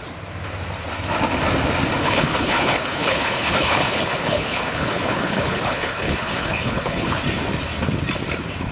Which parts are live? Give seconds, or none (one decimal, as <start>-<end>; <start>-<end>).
0.0-2.0; 7.2-8.7